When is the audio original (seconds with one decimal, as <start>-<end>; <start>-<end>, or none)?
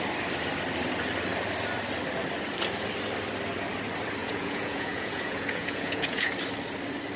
0.0-4.2; 6.3-7.2